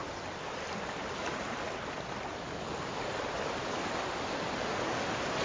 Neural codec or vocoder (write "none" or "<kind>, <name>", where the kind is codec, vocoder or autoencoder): none